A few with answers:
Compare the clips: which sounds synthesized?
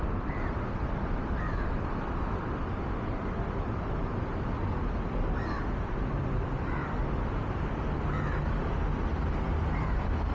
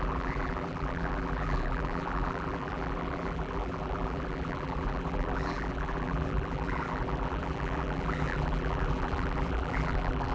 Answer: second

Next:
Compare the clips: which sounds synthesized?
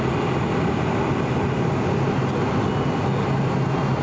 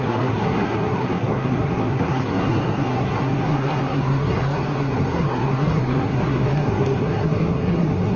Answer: second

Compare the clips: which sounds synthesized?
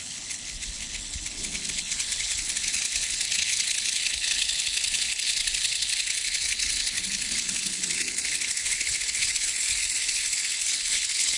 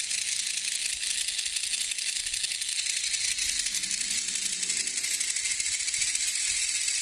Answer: first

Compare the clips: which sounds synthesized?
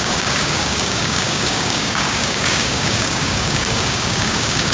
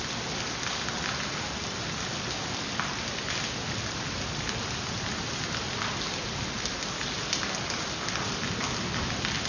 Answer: first